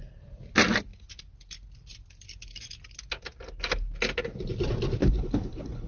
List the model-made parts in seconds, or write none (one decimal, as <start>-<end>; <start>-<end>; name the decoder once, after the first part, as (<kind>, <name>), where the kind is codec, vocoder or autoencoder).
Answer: 5.0-5.9 (codec, HILCodec)